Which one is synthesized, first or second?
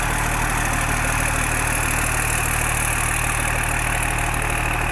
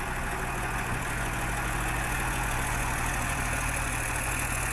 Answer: second